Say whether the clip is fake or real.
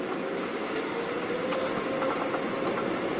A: real